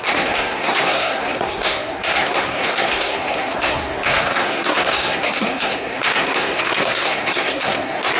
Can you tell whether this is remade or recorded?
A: remade